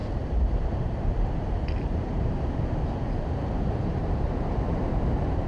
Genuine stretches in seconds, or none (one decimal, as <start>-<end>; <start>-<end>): 2.4-3.4